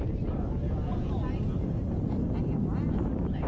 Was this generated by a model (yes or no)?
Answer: no